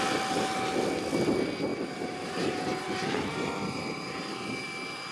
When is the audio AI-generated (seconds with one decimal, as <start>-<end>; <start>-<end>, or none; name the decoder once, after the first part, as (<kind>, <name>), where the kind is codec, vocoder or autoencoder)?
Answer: 1.7-4.6 (vocoder, BigVGAN v2)